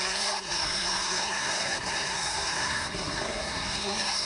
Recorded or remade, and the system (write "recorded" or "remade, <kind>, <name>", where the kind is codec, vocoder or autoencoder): remade, codec, SNAC